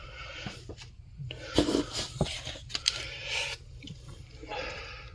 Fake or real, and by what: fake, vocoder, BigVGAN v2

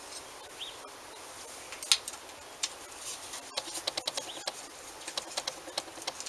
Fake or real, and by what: real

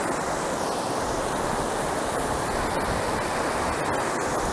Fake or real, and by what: real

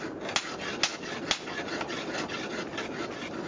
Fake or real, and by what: real